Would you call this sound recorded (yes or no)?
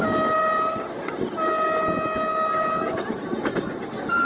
yes